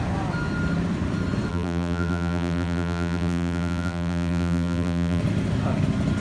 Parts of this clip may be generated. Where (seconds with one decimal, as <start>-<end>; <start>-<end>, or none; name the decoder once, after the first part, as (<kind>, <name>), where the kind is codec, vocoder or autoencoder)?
1.5-5.2 (vocoder, BigVGAN v2)